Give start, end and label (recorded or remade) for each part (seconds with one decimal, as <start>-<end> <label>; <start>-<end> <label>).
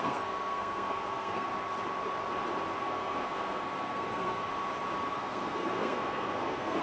0.0-1.5 remade; 1.5-2.8 recorded; 2.8-4.5 remade; 4.5-5.1 recorded; 5.1-6.8 remade